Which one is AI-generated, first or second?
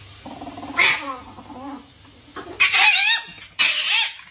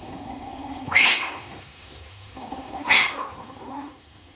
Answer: second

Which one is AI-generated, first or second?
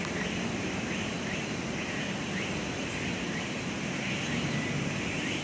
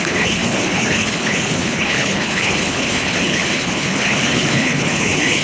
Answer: second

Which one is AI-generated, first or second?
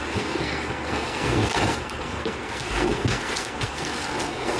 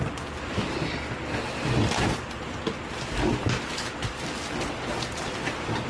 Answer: first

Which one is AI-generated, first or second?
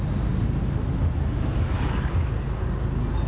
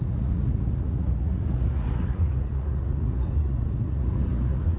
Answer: second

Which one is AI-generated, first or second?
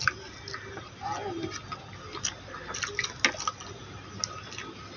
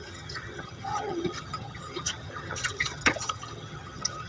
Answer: second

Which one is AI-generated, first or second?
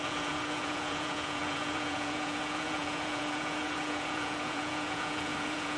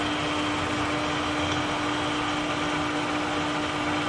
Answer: first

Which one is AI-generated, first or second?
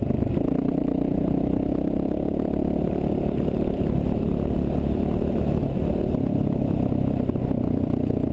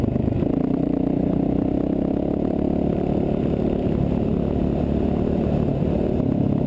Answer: first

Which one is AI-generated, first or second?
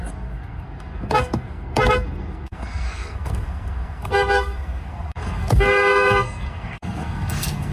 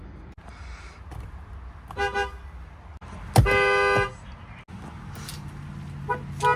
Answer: first